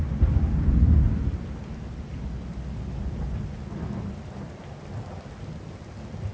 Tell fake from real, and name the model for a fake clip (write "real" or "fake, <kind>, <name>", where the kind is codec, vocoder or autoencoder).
real